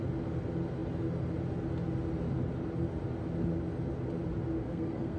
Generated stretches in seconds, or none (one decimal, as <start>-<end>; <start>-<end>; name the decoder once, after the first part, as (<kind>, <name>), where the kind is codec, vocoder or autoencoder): 4.6-5.2 (codec, SNAC)